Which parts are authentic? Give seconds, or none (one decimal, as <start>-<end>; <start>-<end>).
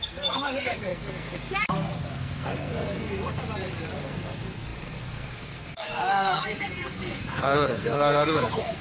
3.4-4.0